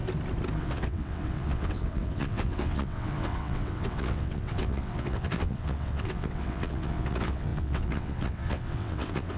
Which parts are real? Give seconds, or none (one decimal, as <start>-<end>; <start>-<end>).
0.0-0.6